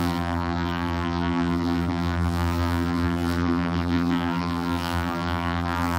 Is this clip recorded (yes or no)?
no